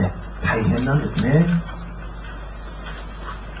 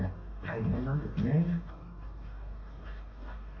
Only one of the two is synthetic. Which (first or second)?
second